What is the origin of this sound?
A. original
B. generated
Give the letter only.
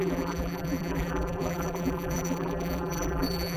B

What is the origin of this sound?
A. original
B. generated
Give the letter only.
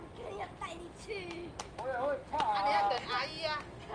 A